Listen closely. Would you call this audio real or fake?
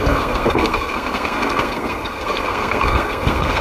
fake